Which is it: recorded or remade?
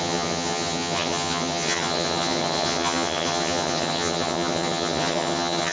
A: remade